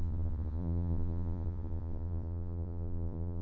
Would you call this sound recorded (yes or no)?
no